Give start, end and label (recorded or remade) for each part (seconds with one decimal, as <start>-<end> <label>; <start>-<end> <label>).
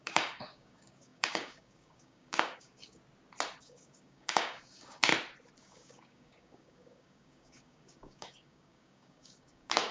0.0-3.0 remade; 3.0-3.6 recorded; 3.6-5.1 remade; 5.1-5.6 recorded; 5.6-9.9 remade